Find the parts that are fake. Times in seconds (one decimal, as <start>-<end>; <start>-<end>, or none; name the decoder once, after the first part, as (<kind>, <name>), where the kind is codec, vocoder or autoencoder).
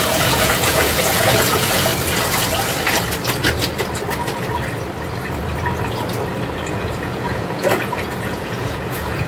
0.0-1.9 (vocoder, Vocos); 6.7-9.3